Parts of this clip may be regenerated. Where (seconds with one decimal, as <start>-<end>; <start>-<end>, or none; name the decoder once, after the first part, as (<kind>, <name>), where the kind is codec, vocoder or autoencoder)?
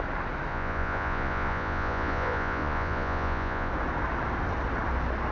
0.5-3.7 (vocoder, Vocos)